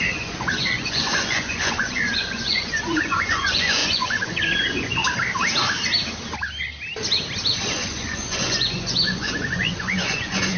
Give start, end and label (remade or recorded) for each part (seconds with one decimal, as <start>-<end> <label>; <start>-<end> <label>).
0.0-5.0 remade; 5.0-7.7 recorded; 7.7-10.6 remade